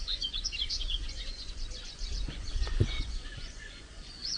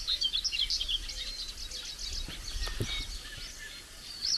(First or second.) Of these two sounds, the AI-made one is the first